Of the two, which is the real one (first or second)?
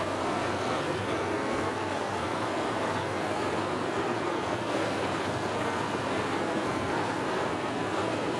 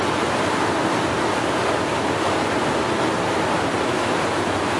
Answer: second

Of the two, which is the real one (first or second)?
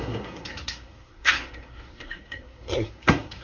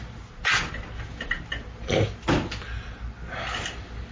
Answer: second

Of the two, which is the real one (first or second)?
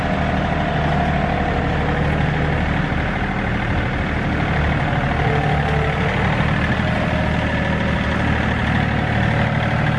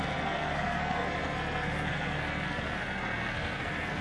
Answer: first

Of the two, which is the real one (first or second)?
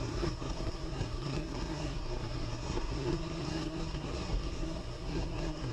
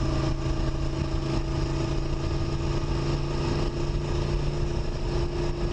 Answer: second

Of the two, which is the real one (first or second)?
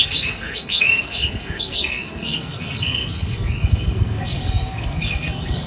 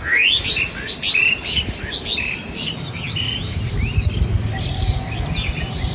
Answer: second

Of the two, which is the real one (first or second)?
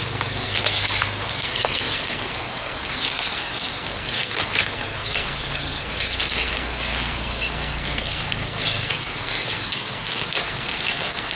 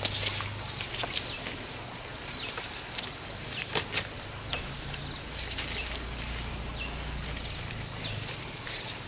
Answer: second